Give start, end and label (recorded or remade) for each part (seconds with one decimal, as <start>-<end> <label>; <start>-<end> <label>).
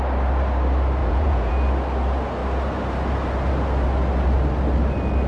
0.0-1.0 recorded; 1.0-1.5 remade; 1.5-5.3 recorded